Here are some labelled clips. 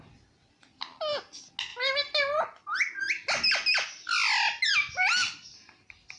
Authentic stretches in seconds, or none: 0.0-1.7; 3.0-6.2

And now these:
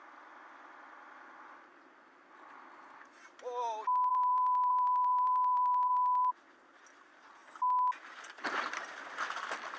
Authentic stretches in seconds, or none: 0.0-4.1; 6.3-9.8

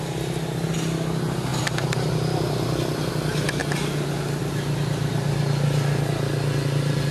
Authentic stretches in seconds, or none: 0.0-1.5; 3.1-7.1